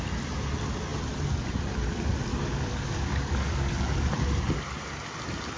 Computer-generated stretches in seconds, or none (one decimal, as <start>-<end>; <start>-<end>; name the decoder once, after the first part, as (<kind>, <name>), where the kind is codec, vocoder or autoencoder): 2.3-4.1 (codec, DAC)